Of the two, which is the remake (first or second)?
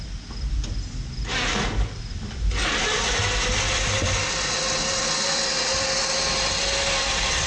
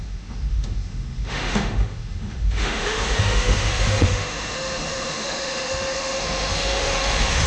second